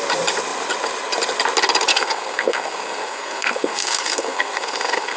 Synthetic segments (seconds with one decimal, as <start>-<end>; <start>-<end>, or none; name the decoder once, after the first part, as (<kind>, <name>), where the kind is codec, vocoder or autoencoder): 1.9-5.2 (codec, SNAC)